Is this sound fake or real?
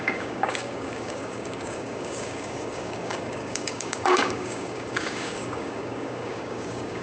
fake